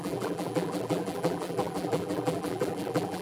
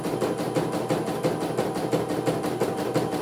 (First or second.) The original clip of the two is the second